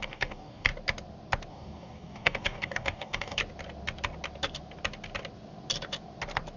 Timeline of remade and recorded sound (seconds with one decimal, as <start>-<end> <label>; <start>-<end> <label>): 0.0-0.7 remade; 0.7-1.5 recorded; 1.5-3.4 remade; 3.4-6.6 recorded

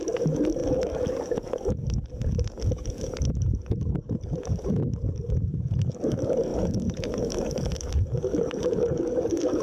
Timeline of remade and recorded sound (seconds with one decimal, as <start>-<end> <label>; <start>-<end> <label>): 0.0-9.6 remade

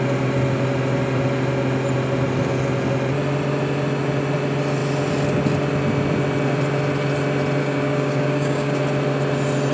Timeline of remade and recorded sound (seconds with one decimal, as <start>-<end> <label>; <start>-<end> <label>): 0.0-7.6 recorded; 7.6-8.8 remade; 8.8-9.7 recorded